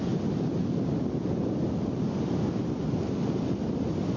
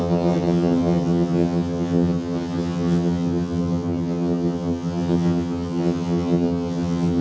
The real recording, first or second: first